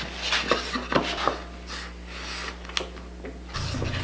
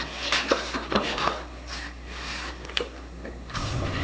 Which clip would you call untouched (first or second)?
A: first